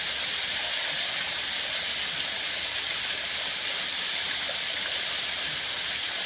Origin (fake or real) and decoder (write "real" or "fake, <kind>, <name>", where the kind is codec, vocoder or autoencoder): real